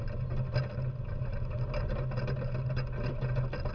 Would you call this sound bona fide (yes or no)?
yes